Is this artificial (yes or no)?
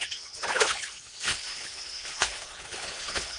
yes